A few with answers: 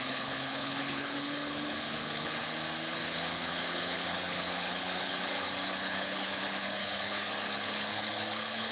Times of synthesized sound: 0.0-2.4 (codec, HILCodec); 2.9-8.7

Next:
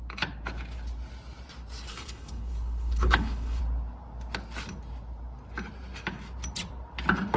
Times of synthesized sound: 1.9-3.6 (codec, HILCodec)

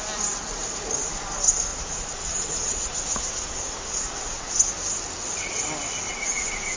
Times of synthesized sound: 1.7-4.5 (vocoder, Vocos); 6.1-6.8

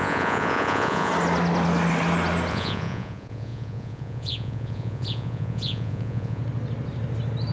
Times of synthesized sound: 0.0-1.1 (vocoder, Vocos); 2.5-6.4

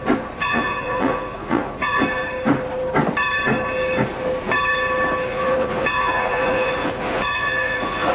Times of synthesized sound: 0.4-2.0 (vocoder, Vocos); 5.3-8.1

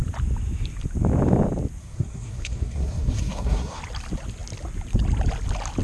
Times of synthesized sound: 1.8-3.8 (codec, SNAC)

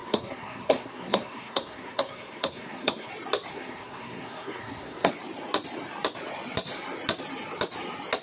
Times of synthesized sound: 0.0-3.1 (codec, SNAC); 3.5-5.1

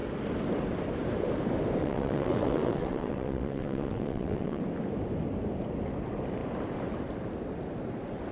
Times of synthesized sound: 1.8-4.6 (vocoder, WaveNeXt)